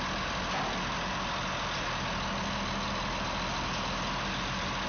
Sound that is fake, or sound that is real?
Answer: real